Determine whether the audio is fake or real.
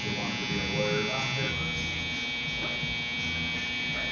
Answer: real